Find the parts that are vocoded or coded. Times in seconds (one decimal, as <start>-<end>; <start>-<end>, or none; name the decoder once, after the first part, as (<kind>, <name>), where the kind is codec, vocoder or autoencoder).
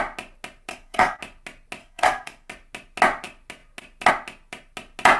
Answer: 0.7-1.2 (codec, SNAC); 1.8-2.5